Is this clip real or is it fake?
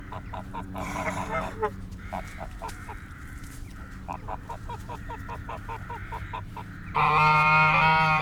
fake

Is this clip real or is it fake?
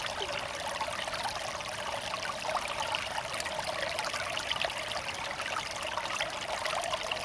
real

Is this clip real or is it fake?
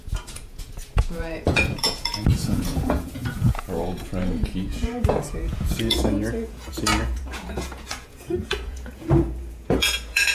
fake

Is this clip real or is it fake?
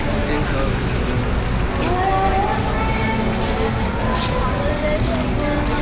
real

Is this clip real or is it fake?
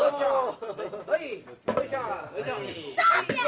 real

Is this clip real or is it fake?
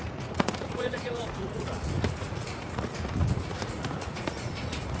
fake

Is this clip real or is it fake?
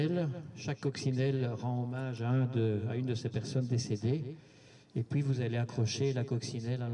real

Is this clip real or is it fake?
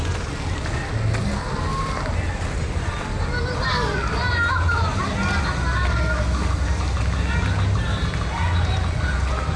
real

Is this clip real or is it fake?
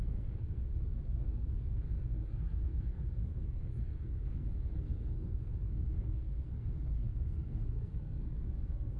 fake